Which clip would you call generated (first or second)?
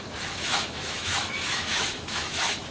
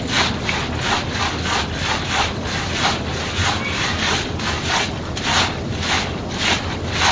first